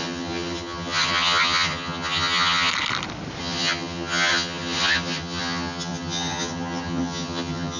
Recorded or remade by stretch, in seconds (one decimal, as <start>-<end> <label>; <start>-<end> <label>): 0.0-2.7 remade; 2.7-3.4 recorded; 3.4-7.8 remade